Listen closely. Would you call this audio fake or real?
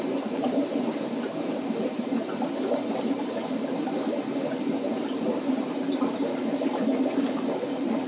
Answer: real